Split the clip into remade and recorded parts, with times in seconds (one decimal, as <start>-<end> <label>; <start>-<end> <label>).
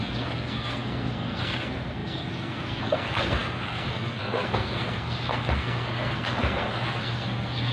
0.0-7.7 remade